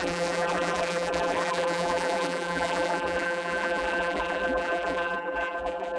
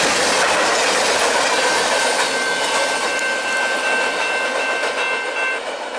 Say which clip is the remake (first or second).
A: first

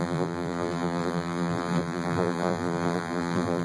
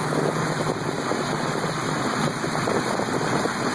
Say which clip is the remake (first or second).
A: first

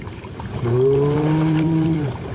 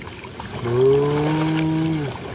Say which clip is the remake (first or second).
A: first